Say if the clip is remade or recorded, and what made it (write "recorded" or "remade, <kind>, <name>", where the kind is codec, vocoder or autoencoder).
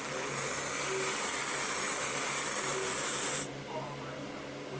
recorded